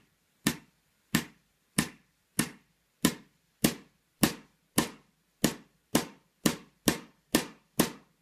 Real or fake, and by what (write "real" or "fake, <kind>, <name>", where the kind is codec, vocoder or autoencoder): fake, vocoder, BigVGAN v2